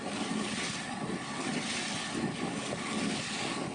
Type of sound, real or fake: real